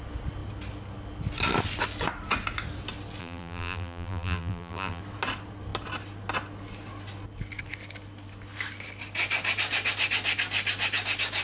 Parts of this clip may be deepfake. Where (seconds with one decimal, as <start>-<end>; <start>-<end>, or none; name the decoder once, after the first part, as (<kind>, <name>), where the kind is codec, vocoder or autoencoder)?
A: 3.2-5.0 (vocoder, BigVGAN v2)